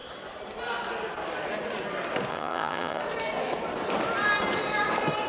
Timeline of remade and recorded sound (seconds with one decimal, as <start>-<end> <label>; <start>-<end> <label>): 0.0-2.3 recorded; 2.3-3.0 remade; 3.0-5.3 recorded